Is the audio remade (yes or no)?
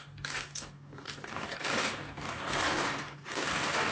yes